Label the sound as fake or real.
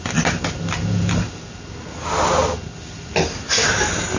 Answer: real